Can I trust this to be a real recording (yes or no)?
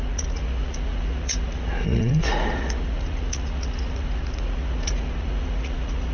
no